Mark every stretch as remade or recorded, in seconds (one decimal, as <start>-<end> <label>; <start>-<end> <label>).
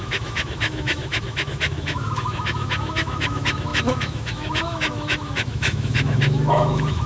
0.0-7.1 remade